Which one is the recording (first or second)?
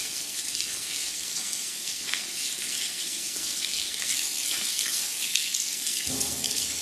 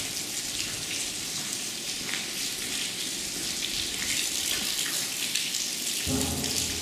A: second